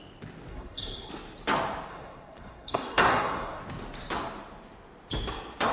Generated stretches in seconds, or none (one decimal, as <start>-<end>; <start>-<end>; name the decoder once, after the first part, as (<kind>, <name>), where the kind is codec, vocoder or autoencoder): 0.5-1.1 (codec, SNAC); 1.9-3.6